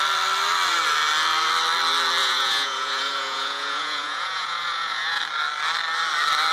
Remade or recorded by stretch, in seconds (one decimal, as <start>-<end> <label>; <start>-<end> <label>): 0.0-2.2 recorded; 2.2-5.2 remade; 5.2-6.5 recorded